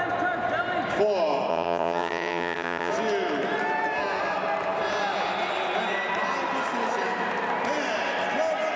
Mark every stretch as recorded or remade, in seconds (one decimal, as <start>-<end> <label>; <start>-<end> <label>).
0.0-1.5 recorded; 1.5-2.9 remade; 2.9-8.8 recorded